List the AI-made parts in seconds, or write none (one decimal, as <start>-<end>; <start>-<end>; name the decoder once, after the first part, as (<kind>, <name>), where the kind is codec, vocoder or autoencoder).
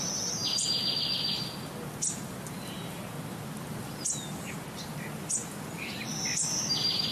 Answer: none